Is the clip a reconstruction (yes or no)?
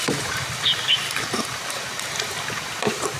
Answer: no